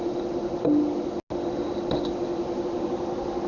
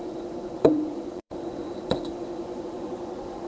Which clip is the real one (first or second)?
first